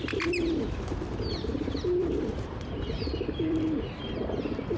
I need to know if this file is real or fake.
real